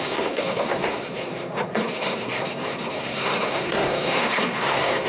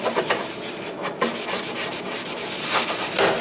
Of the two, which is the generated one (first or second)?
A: first